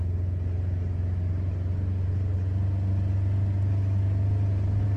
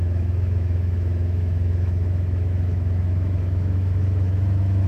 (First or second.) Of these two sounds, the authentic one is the first